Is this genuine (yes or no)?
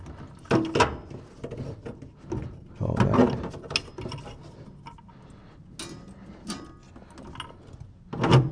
yes